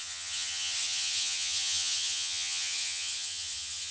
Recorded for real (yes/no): no